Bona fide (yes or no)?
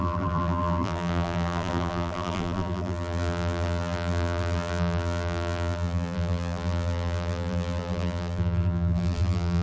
no